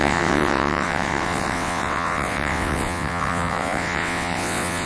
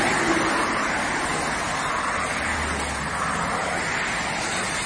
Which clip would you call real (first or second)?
second